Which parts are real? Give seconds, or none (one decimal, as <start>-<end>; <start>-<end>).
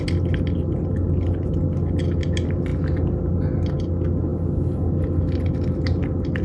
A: 0.0-6.4